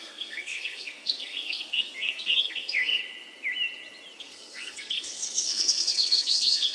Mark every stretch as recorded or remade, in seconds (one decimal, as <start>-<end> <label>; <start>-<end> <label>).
0.0-3.0 remade; 3.0-4.2 recorded; 4.2-6.7 remade